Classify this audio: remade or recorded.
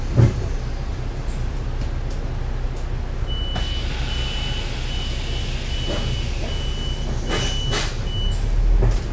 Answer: recorded